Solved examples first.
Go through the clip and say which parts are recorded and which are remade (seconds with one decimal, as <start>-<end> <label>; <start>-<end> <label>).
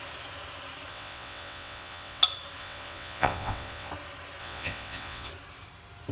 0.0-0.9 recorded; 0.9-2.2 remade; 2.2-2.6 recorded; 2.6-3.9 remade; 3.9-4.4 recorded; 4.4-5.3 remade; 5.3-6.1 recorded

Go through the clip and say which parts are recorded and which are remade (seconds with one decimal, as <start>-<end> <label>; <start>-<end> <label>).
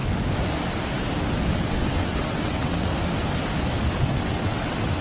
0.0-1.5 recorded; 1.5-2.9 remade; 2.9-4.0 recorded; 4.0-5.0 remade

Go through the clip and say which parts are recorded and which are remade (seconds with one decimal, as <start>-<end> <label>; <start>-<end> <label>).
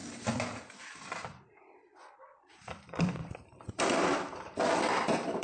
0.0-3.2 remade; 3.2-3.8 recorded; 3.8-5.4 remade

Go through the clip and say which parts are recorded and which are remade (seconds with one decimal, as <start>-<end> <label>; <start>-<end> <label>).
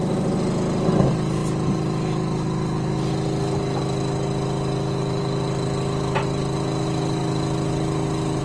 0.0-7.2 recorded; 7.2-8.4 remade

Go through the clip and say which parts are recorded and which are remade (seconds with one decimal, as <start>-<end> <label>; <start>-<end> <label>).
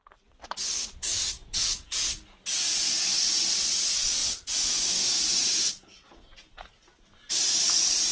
0.0-1.0 recorded; 1.0-2.1 remade; 2.1-4.2 recorded; 4.2-6.7 remade; 6.7-8.1 recorded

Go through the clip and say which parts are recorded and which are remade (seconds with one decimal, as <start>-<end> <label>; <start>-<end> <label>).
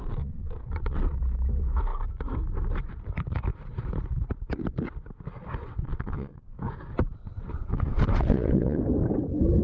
0.0-1.2 remade; 1.2-5.6 recorded; 5.6-6.4 remade; 6.4-7.1 recorded; 7.1-8.8 remade; 8.8-9.6 recorded